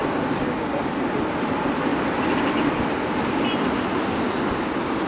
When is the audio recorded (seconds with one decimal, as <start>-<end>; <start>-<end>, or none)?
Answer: 0.0-1.9; 3.8-5.1